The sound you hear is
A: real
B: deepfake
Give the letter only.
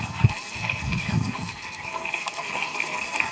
B